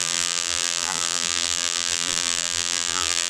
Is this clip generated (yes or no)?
yes